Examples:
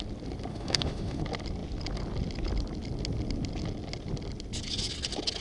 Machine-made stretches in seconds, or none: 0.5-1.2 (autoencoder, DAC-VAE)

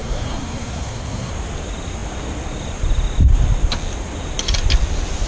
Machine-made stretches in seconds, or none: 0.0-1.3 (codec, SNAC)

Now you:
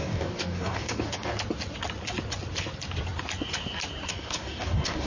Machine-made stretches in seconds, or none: 0.0-1.3 (codec, DAC); 4.1-5.1

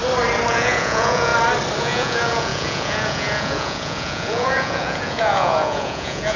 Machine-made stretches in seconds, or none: 0.5-1.3 (vocoder, Vocos); 1.8-6.4

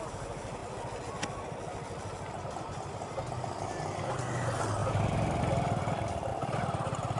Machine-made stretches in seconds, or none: 6.3-7.2 (vocoder, BigVGAN v2)